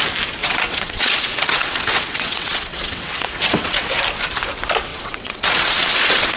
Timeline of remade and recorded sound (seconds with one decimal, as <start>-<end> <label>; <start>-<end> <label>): 0.0-0.4 recorded; 0.4-3.9 remade; 3.9-4.9 recorded; 4.9-6.4 remade